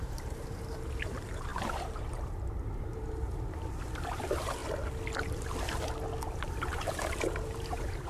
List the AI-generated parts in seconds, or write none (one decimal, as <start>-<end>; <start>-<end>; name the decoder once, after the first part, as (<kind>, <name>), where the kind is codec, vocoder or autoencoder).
0.0-4.6 (vocoder, BigVGAN v2); 6.5-8.1